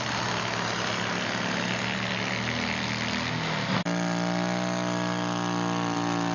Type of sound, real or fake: real